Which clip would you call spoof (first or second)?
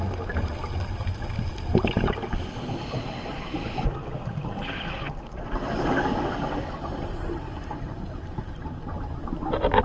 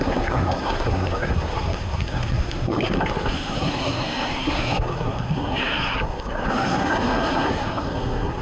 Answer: second